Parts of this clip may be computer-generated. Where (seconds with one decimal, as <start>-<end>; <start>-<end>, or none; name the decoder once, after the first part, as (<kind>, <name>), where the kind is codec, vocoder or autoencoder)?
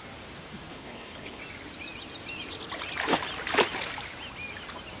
0.7-1.4 (codec, HILCodec)